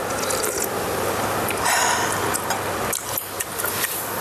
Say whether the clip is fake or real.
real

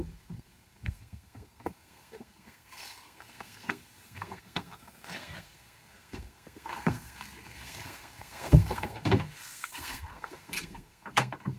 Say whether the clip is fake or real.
fake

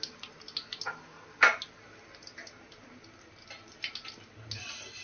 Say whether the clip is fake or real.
real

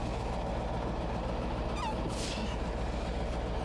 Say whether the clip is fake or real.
real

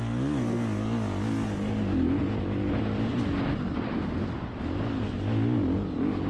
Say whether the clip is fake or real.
real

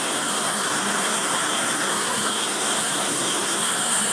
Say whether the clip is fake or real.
fake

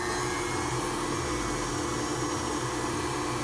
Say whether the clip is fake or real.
real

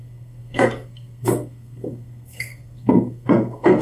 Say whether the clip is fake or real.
fake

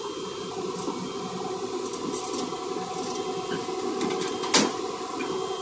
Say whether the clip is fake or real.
real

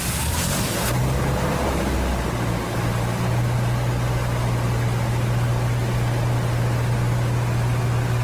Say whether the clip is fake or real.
real